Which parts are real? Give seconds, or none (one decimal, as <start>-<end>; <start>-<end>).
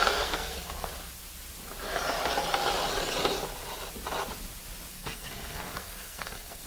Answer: 0.9-4.9